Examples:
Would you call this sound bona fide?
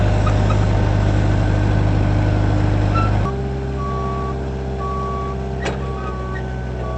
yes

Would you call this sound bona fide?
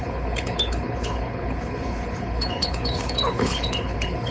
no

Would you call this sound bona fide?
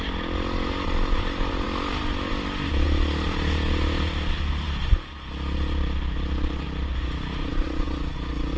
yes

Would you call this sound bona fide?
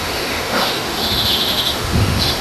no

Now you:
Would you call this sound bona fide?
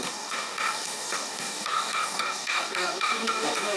no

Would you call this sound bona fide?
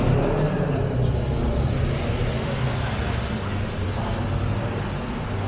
yes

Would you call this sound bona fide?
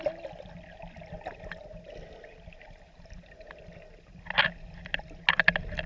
yes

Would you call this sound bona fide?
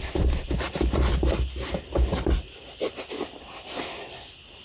yes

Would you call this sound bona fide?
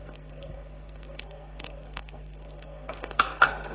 no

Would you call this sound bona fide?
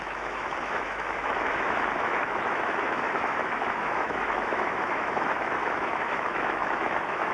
no